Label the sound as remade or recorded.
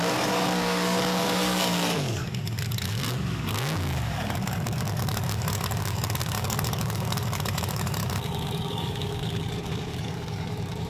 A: remade